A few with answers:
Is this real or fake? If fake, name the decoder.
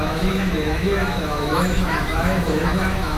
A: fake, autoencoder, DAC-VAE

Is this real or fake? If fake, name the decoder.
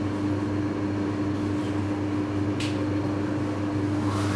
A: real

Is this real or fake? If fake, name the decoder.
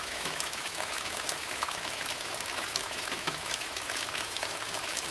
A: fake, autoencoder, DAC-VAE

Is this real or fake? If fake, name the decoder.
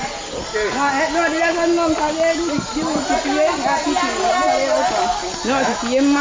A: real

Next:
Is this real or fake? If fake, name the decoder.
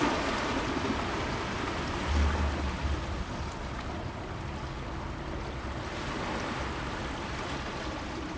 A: real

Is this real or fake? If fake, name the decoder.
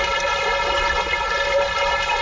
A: real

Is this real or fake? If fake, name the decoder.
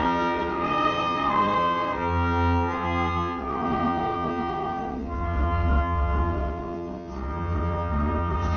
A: fake, vocoder, WaveNeXt